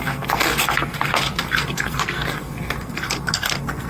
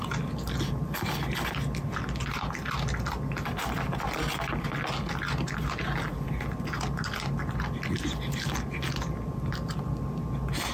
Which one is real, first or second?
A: second